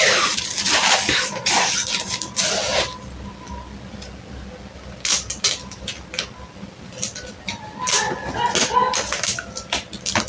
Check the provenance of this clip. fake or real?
real